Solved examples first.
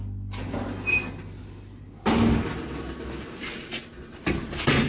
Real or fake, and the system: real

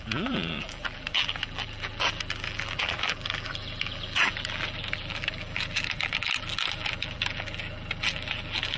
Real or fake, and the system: fake, vocoder, BigVGAN v2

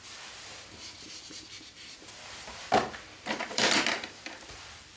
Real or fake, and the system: fake, vocoder, BigVGAN v2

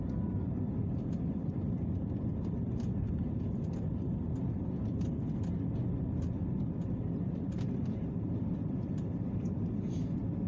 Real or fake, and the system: fake, vocoder, BigVGAN v2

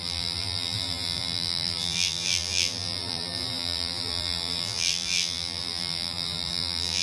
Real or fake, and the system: fake, vocoder, BigVGAN v2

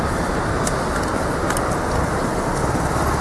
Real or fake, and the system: real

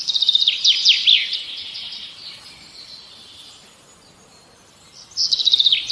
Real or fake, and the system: real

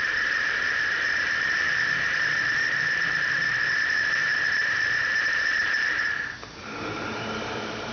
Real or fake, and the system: fake, vocoder, BigVGAN v2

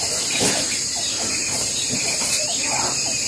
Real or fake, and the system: fake, vocoder, BigVGAN v2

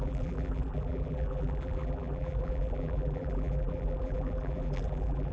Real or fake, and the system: fake, vocoder, BigVGAN v2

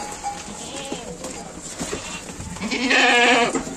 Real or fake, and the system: real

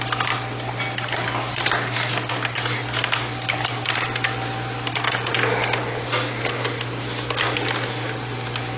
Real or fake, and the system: real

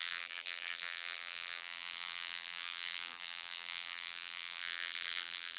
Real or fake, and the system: fake, vocoder, BigVGAN v2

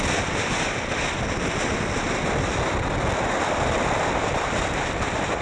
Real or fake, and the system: real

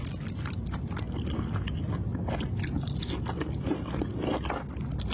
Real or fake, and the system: real